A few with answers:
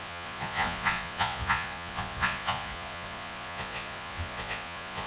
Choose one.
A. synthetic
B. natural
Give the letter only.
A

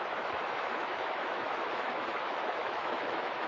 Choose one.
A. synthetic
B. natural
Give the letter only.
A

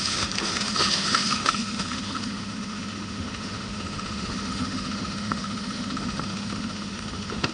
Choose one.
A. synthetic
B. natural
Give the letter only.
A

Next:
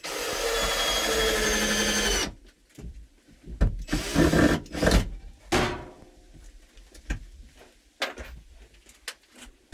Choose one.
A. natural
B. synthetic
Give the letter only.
A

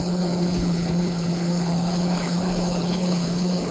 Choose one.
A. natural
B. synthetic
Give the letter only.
B